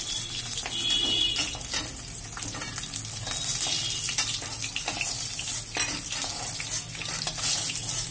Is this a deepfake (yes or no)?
no